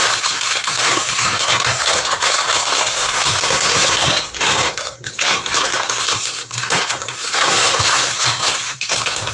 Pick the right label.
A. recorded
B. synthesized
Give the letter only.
B